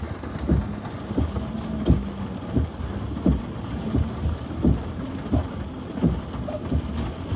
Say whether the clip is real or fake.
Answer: real